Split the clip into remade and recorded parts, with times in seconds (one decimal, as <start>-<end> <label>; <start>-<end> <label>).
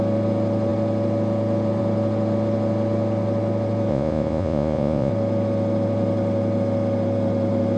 0.0-3.9 recorded; 3.9-5.1 remade; 5.1-7.8 recorded